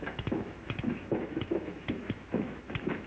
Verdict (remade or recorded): remade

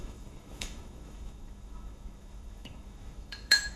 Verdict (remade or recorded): remade